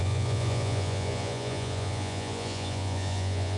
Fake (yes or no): yes